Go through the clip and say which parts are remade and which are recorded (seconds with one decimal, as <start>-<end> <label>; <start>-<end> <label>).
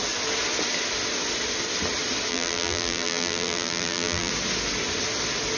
0.0-2.3 recorded; 2.3-4.3 remade; 4.3-5.6 recorded